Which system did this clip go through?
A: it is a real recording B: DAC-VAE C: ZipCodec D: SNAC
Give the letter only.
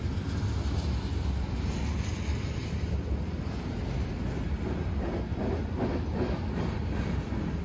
A